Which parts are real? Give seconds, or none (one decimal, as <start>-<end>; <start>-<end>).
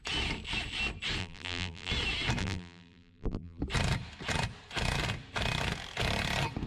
0.0-1.2; 1.9-2.4; 3.6-6.7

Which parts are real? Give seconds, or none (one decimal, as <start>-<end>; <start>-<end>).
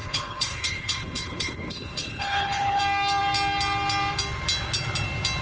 2.8-5.4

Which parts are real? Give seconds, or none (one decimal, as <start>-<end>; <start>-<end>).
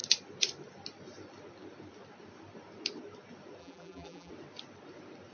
0.0-3.6; 4.3-5.3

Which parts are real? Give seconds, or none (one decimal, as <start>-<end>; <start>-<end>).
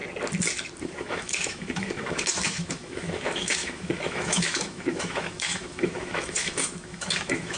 0.0-0.8